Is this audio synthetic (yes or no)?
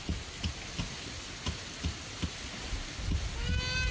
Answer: no